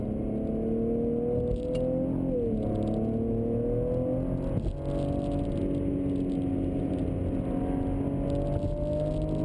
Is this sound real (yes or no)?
yes